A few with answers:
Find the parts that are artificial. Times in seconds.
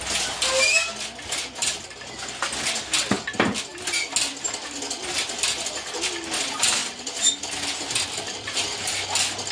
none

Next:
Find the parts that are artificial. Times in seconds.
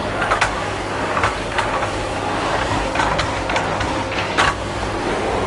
0.0-3.0; 4.2-4.9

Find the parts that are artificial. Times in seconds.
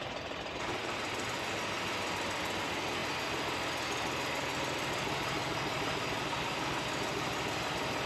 none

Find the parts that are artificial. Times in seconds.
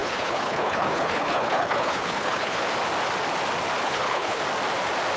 0.0-2.6; 3.8-4.4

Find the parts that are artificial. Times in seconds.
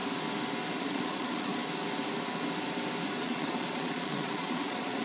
0.8-1.5; 3.2-5.0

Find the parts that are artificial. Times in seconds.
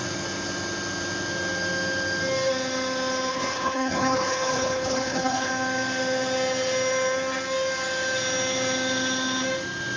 3.3-5.5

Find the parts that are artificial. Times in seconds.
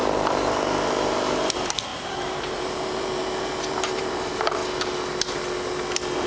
0.0-4.6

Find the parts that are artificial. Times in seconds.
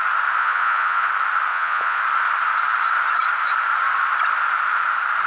0.4-1.1; 1.5-2.0